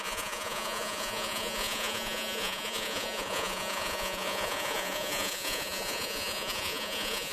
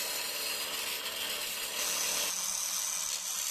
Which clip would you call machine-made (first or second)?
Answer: first